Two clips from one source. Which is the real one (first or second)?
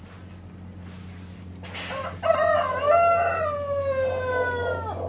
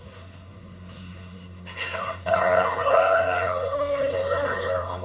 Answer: first